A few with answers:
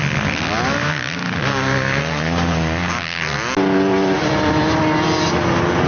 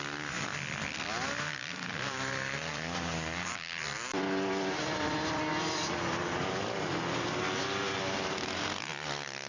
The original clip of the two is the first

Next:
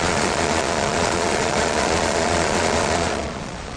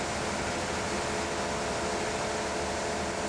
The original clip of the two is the second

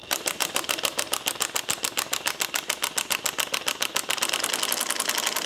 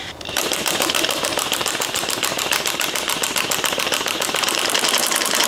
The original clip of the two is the first